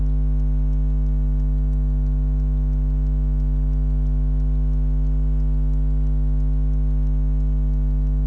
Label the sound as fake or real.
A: real